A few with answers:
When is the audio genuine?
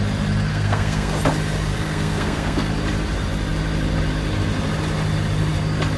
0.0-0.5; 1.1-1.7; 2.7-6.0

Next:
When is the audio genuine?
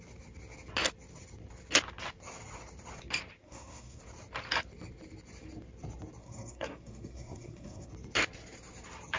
0.0-3.4; 4.0-6.2; 7.9-9.2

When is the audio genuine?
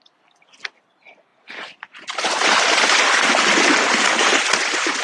0.0-5.0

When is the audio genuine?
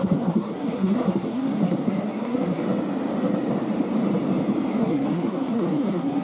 2.6-4.8